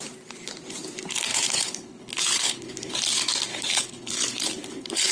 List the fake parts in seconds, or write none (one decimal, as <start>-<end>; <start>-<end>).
1.3-3.0; 3.5-5.1